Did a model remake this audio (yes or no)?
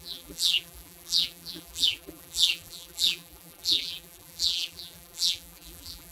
yes